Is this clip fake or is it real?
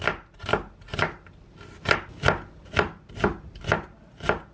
real